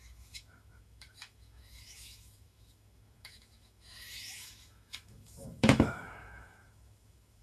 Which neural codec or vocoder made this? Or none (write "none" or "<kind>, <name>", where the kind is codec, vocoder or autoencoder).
autoencoder, DAC-VAE